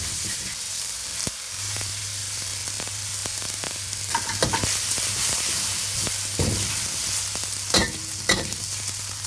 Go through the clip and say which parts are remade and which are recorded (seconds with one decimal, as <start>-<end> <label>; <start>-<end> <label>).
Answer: 0.0-9.3 recorded